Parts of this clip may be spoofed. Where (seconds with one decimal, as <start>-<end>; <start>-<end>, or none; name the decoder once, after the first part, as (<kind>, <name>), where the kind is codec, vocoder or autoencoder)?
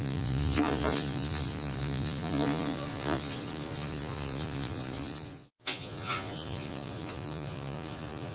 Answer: 0.0-8.3 (vocoder, Vocos)